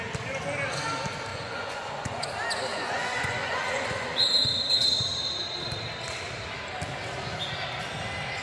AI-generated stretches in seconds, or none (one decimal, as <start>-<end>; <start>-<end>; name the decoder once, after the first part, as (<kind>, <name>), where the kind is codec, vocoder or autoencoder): 1.3-2.3 (vocoder, Vocos); 2.7-4.3